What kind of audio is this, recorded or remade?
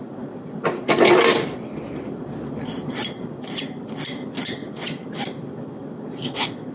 recorded